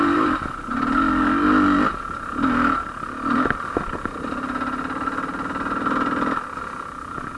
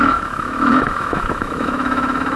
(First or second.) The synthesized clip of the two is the second